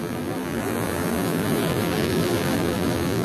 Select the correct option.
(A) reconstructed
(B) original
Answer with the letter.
A